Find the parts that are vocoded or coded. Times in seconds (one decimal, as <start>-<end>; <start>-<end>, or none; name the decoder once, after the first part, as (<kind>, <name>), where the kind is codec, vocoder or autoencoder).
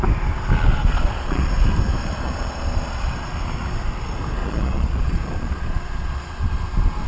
0.7-1.5 (vocoder, Vocos); 2.0-3.3; 4.4-6.3